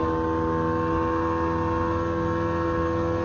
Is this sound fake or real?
real